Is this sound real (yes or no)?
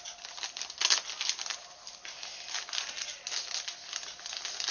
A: yes